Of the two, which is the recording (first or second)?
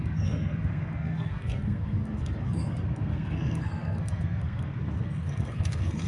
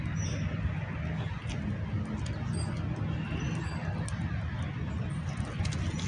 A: second